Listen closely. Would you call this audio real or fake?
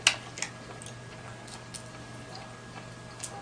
real